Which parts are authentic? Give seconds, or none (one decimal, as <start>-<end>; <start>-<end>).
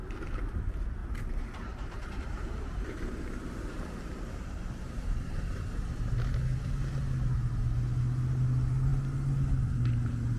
0.0-1.0; 6.1-10.4